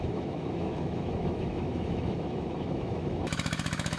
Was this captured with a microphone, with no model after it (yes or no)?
no